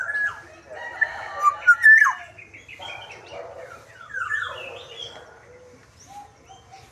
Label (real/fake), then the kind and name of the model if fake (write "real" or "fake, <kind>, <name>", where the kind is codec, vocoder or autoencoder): real